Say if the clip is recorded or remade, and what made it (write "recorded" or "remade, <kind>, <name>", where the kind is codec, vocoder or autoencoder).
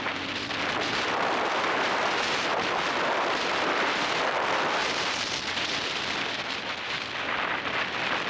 remade, vocoder, BigVGAN v2